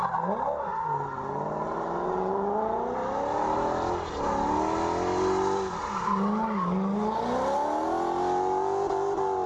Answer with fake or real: real